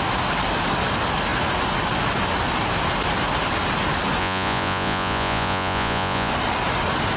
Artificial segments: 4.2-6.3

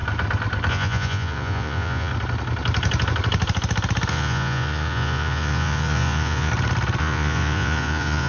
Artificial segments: 0.7-2.1; 4.1-6.5; 7.0-8.3

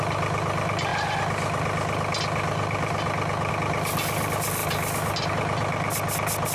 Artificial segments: none

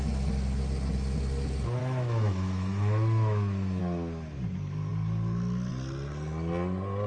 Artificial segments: 1.8-3.8

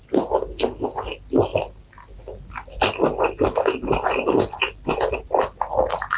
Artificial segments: none

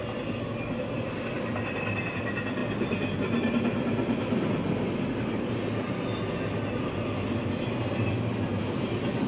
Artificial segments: none